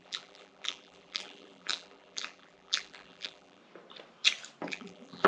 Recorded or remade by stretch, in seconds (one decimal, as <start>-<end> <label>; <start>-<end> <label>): 0.0-3.6 remade; 3.6-4.7 recorded; 4.7-5.3 remade